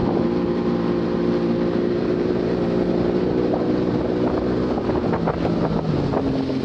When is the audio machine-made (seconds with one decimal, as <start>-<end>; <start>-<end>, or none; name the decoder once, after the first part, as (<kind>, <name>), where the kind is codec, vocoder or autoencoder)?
0.0-4.0 (vocoder, BigVGAN v2)